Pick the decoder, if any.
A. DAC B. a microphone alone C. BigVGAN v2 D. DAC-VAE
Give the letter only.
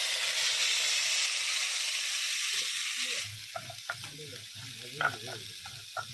B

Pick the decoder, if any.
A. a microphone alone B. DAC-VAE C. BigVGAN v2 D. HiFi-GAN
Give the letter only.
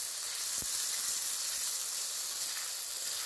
A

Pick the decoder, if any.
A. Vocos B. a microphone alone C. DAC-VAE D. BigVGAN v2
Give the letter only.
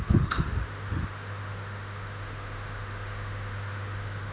C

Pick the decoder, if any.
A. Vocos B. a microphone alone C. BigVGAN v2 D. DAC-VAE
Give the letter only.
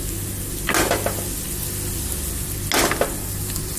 B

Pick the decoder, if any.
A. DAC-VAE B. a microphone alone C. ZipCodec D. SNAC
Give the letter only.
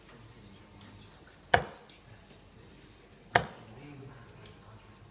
B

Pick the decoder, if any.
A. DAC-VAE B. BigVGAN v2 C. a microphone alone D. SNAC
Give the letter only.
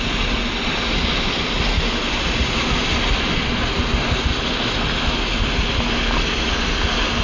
C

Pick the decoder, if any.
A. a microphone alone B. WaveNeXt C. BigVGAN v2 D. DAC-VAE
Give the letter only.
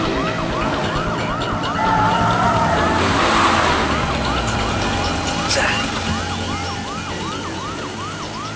A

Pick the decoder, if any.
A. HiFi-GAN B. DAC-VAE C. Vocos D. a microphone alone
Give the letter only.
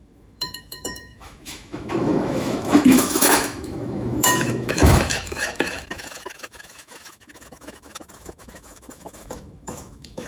B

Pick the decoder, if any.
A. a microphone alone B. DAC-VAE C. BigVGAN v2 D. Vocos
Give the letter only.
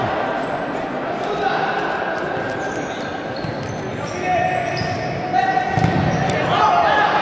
A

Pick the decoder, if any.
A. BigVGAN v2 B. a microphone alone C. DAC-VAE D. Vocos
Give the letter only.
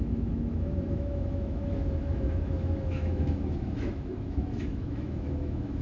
C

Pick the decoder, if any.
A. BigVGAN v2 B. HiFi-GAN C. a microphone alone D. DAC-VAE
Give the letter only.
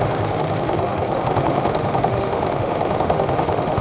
D